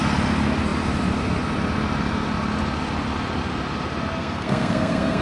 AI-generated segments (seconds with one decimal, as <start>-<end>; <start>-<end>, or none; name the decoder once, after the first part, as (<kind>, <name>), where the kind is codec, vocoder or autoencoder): 4.2-5.2 (codec, SNAC)